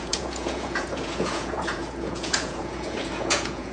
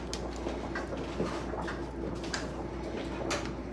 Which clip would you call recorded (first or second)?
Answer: second